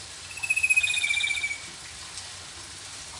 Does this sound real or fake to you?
real